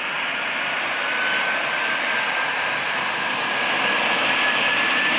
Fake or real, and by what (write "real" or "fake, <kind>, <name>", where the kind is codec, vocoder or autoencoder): real